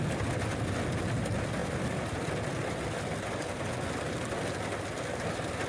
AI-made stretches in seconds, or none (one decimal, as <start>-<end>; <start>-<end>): 1.6-3.6